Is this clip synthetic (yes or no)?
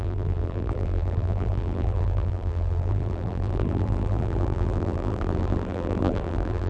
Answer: yes